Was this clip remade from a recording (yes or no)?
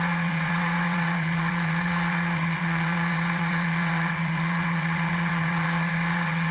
yes